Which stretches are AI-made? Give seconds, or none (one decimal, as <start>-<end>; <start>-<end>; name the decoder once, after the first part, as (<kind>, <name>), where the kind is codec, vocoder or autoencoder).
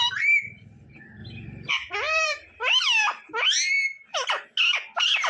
0.0-1.2 (vocoder, BigVGAN v2); 1.7-2.4